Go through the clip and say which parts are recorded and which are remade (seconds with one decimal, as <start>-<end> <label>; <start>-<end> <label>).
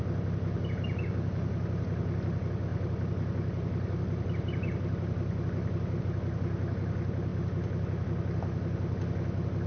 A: 0.0-9.7 recorded